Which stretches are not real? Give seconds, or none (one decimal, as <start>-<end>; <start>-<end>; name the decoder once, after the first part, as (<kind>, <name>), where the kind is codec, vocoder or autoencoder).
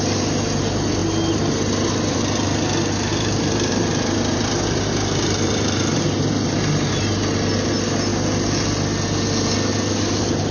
3.1-6.8 (vocoder, BigVGAN v2)